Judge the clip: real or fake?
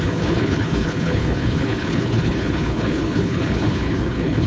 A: fake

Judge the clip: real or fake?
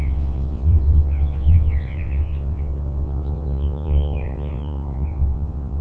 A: fake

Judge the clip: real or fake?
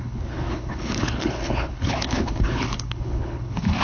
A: fake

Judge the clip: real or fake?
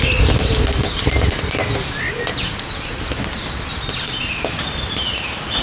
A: real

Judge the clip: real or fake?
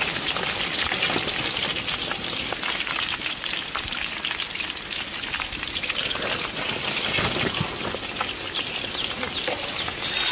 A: real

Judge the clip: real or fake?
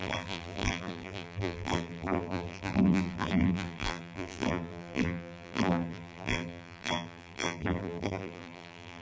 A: fake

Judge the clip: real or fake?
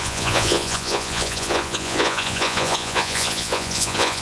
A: fake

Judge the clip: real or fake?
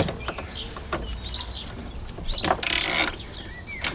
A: real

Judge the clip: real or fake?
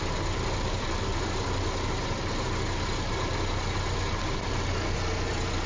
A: real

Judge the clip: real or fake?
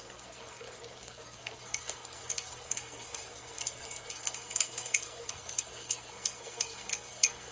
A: fake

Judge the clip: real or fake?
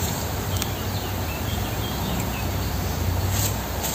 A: fake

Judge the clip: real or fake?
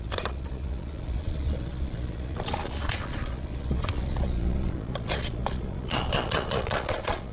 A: fake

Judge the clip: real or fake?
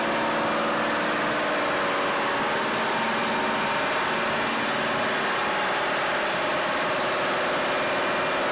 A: real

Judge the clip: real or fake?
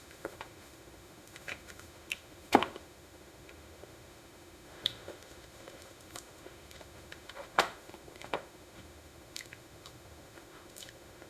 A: fake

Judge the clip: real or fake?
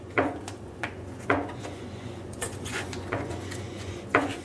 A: fake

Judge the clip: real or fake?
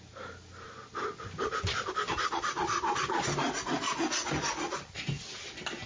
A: real